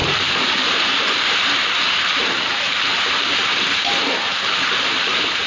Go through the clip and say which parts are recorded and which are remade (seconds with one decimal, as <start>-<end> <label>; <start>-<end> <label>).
0.0-5.5 remade